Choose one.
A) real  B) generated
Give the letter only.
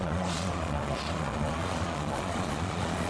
B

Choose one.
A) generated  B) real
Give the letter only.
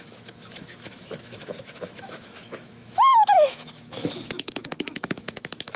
A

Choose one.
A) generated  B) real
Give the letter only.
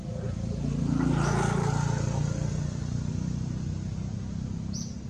B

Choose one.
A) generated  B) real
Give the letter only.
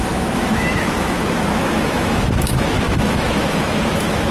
A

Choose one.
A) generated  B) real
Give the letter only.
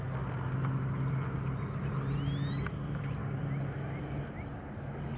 B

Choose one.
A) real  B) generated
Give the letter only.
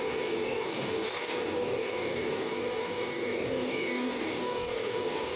B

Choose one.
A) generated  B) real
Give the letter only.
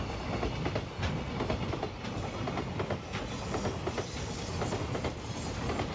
B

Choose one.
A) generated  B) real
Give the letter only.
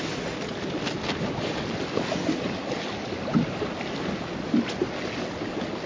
B